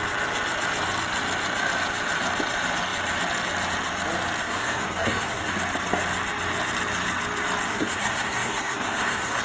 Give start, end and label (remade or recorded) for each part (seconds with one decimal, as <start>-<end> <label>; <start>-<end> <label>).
0.0-4.4 recorded; 4.4-5.5 remade; 5.5-7.7 recorded; 7.7-9.4 remade